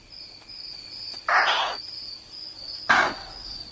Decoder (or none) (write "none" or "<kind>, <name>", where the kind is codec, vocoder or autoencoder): none